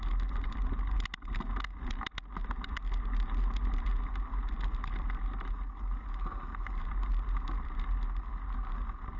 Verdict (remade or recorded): recorded